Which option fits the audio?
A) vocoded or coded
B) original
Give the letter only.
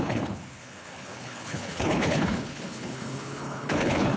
A